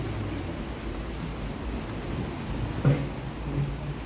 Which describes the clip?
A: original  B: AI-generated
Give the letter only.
A